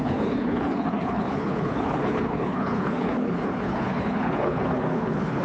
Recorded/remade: remade